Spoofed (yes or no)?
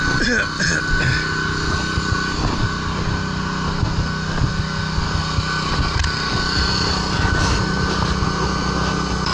no